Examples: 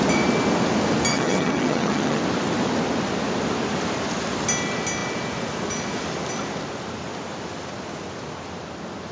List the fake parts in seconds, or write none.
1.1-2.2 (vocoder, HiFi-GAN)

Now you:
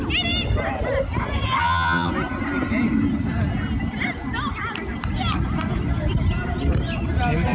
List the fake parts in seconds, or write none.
1.6-2.1 (vocoder, HiFi-GAN)